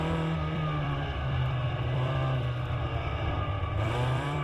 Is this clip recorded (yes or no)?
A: no